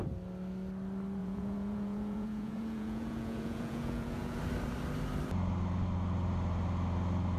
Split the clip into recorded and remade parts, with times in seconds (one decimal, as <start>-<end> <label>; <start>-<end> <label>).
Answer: 0.0-1.2 recorded; 1.2-4.4 remade; 4.4-7.4 recorded